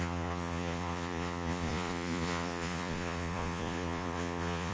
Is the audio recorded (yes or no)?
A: no